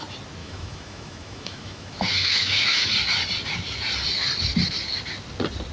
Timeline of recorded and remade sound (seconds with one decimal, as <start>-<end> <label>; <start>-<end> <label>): 0.0-0.4 recorded; 0.4-2.9 remade; 2.9-5.7 recorded